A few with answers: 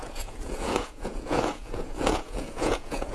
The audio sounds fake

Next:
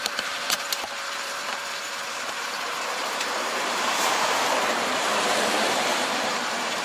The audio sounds fake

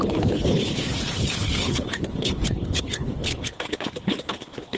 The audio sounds fake